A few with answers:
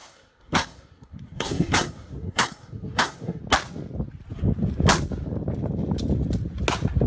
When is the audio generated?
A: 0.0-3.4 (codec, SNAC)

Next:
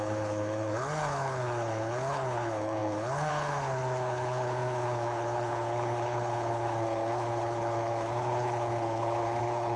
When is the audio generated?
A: 0.0-9.8 (codec, HILCodec)

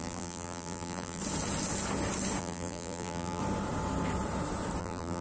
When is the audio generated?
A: 0.0-1.2 (vocoder, BigVGAN v2); 2.4-3.4; 4.8-5.2